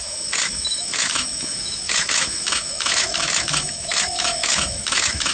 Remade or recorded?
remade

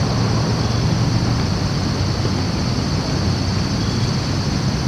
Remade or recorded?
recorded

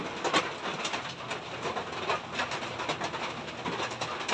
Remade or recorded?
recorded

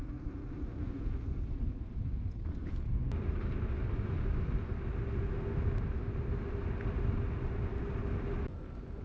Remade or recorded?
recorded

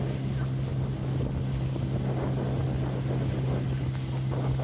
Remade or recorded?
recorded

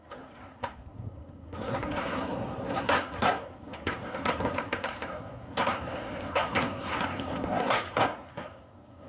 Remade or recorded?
remade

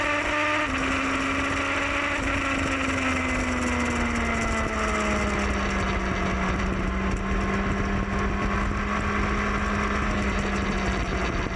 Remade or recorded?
recorded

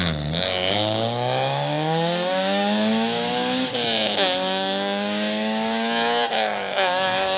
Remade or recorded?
remade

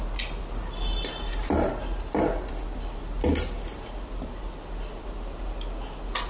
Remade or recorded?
recorded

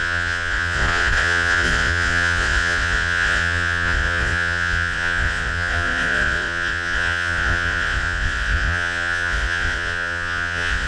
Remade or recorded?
remade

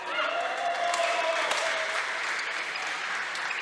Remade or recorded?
remade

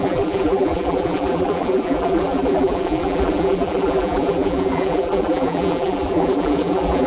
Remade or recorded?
remade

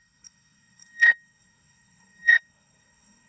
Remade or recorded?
remade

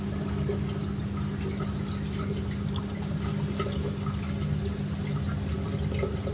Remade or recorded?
recorded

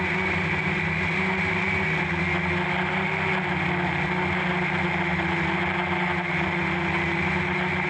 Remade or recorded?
recorded